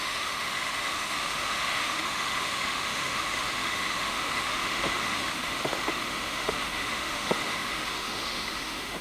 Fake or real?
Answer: fake